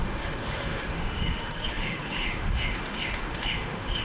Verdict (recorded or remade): remade